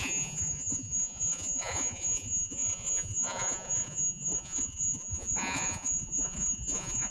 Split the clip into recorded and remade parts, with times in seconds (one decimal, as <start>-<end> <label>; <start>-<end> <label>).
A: 0.0-7.1 remade